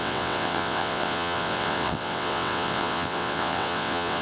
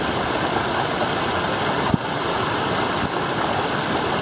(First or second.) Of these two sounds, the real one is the second